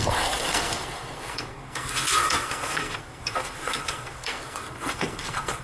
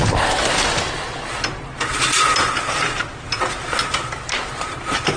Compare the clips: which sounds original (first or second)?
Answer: second